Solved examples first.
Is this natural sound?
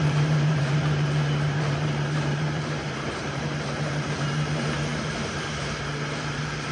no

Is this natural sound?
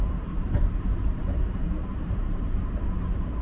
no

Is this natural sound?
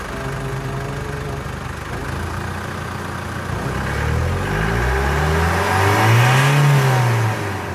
yes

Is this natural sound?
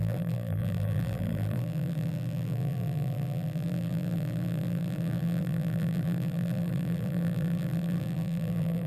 no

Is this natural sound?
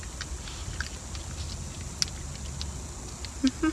yes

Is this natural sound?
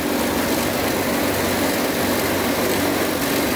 yes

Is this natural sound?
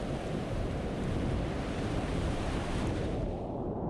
no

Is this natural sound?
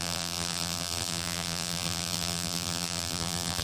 no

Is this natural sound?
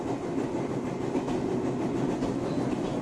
yes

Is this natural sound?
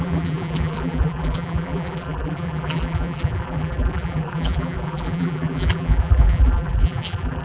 no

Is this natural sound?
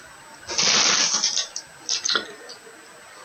yes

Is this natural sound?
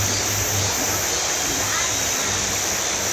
yes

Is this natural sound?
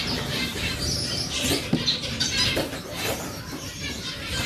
no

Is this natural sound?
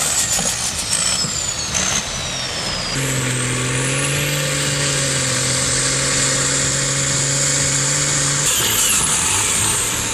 yes